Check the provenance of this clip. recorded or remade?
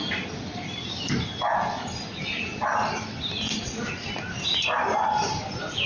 recorded